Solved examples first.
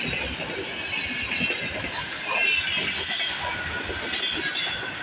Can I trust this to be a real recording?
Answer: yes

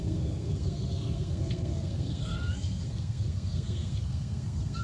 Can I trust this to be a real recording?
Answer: no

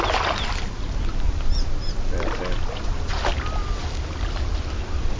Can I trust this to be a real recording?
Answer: yes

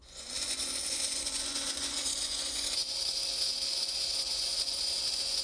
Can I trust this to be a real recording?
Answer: no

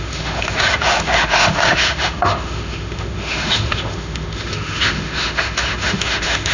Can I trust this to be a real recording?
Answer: no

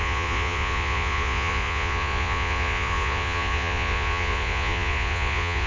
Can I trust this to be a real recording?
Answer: no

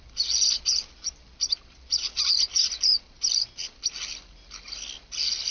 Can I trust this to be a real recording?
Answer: yes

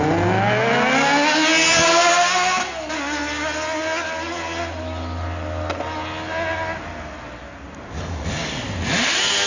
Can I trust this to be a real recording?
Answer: yes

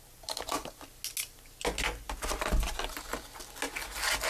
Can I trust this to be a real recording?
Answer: yes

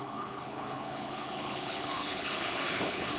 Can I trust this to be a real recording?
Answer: no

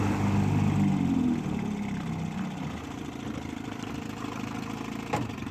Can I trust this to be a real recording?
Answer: yes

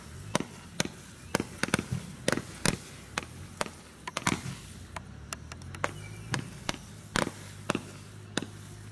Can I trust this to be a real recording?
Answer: yes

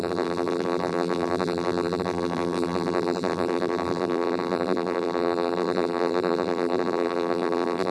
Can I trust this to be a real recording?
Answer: no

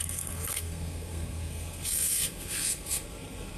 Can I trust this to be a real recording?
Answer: no